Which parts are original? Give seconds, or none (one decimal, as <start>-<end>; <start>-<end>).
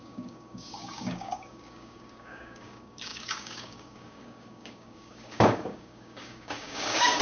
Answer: none